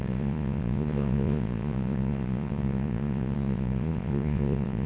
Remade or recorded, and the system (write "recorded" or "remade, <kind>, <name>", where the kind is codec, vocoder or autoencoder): remade, vocoder, Vocos